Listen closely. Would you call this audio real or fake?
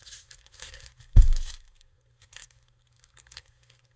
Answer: fake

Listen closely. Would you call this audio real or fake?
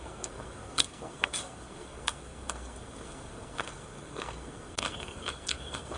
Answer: fake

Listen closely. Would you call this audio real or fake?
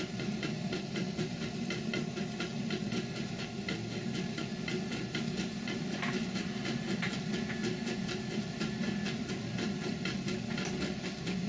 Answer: real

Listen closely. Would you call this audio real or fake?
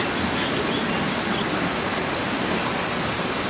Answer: real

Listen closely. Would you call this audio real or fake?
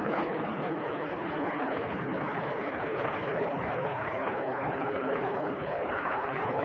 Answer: fake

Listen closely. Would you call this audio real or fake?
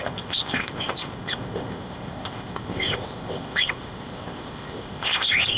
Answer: fake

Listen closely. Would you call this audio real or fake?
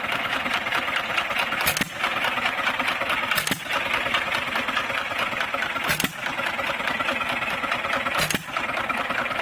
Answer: real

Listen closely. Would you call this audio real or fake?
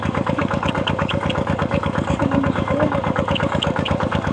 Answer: fake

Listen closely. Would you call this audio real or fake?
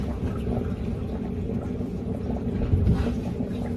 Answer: real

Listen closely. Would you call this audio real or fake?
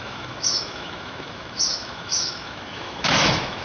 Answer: fake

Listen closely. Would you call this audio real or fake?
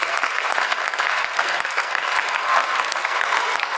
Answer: fake